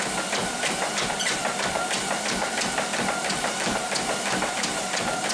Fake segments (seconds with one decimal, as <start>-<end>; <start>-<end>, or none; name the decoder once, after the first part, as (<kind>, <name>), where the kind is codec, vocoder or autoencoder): 0.4-1.2 (vocoder, BigVGAN v2); 2.0-5.3